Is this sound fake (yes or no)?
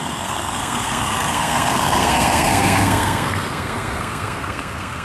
yes